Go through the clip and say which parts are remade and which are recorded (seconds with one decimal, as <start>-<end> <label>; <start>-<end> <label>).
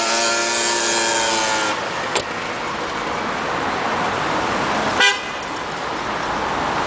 0.0-6.9 recorded